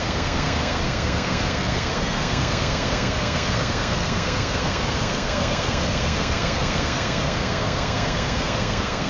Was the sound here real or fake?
fake